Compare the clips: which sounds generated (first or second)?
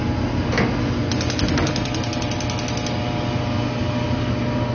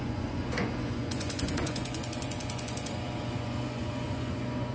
second